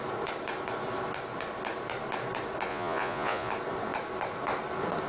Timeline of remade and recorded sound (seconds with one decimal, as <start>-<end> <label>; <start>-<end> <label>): 0.0-2.7 recorded; 2.7-3.5 remade; 3.5-5.1 recorded